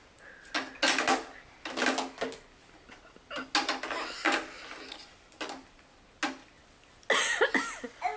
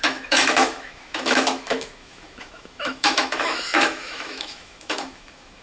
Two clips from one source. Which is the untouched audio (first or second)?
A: first